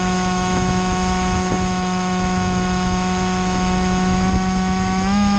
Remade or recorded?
remade